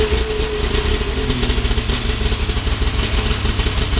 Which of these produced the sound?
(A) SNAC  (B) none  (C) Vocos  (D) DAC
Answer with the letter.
B